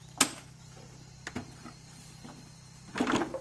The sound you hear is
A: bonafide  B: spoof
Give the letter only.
A